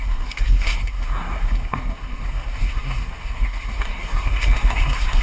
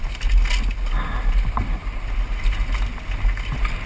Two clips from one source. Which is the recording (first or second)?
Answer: second